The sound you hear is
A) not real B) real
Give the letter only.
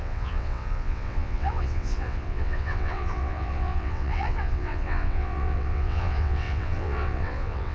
A